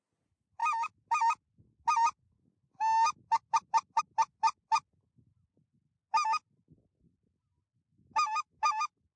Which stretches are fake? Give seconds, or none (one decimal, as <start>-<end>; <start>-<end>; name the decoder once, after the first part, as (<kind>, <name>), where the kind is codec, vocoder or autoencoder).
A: 7.7-8.7 (autoencoder, DAC-VAE)